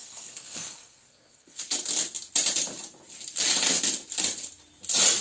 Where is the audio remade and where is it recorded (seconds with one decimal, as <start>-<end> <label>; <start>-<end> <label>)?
0.0-1.6 remade; 1.6-5.2 recorded